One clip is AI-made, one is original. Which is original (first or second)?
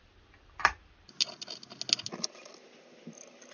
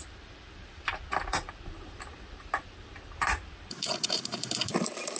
first